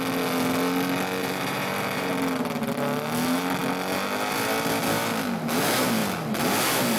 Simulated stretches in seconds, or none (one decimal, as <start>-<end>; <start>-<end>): 1.2-2.1